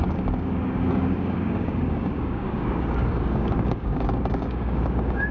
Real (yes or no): no